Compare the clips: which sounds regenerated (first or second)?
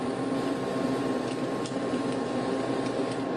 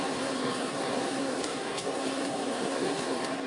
second